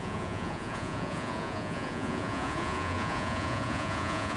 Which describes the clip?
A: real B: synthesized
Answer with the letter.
B